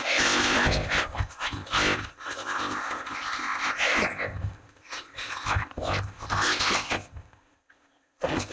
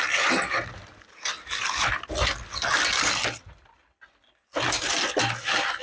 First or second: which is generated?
first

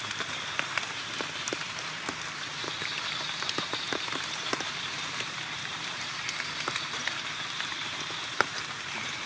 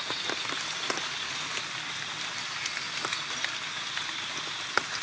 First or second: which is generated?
first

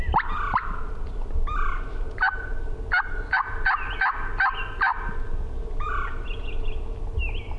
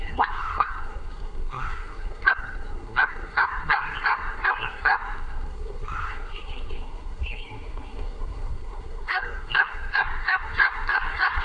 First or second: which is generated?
second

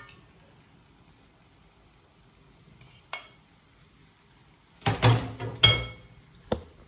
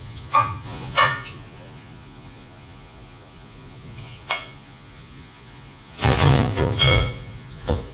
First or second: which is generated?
second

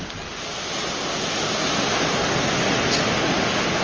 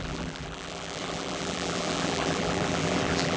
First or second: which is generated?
second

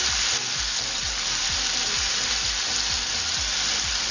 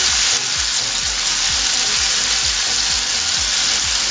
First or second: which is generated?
first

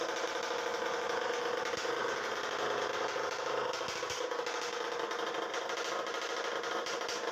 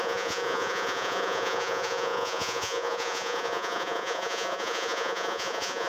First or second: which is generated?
second